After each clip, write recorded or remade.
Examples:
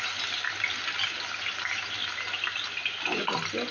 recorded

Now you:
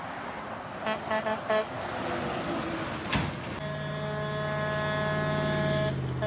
recorded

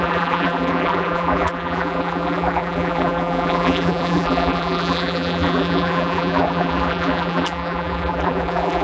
remade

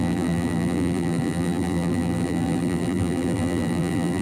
remade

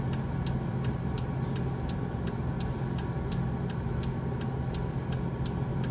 recorded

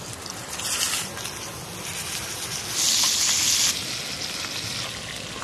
recorded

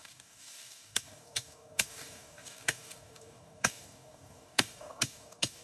remade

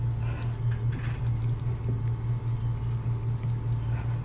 recorded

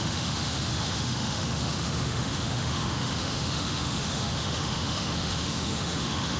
remade